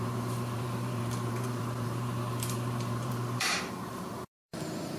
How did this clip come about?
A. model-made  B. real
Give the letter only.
A